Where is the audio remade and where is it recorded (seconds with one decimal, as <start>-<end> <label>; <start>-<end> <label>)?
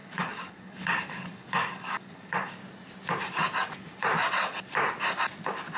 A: 0.0-2.6 remade; 2.6-5.8 recorded